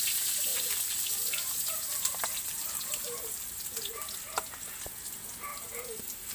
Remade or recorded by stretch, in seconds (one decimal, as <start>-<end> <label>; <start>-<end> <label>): 0.0-0.5 recorded; 0.5-4.1 remade; 4.1-5.5 recorded; 5.5-6.3 remade